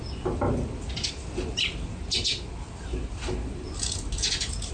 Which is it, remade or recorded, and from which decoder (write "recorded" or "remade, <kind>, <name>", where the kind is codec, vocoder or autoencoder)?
recorded